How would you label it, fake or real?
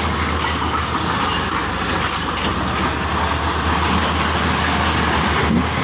real